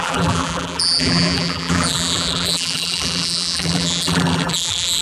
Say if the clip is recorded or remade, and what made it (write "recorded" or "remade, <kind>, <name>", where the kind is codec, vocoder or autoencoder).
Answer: remade, vocoder, BigVGAN v2